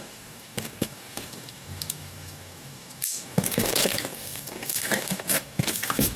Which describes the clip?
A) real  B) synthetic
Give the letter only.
B